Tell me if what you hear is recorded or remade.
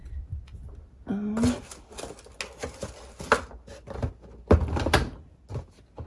recorded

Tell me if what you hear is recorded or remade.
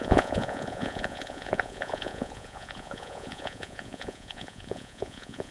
remade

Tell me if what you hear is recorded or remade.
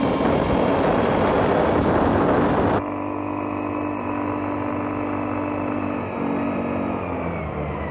recorded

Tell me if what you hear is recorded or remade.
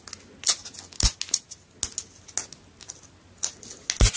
recorded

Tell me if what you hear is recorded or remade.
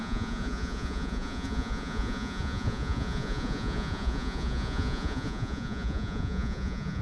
remade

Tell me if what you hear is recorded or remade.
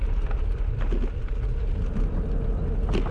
recorded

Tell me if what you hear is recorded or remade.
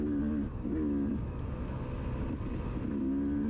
recorded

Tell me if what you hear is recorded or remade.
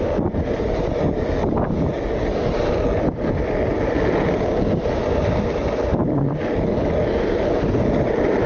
recorded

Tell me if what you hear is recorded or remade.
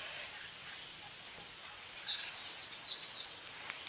recorded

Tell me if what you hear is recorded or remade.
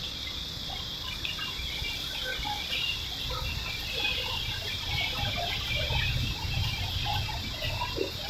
recorded